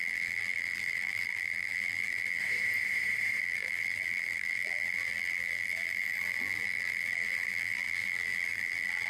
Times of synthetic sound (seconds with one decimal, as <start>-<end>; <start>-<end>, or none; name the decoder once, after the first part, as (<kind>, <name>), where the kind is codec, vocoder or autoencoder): 0.0-2.4 (vocoder, BigVGAN v2); 3.4-9.1